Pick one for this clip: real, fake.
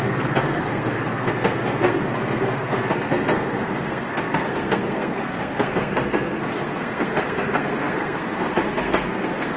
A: fake